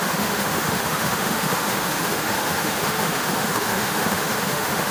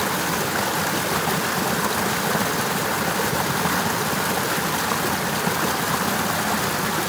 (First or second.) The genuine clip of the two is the second